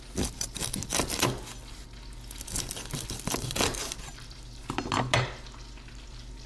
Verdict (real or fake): real